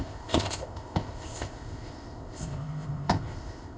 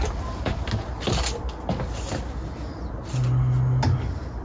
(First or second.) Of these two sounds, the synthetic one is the first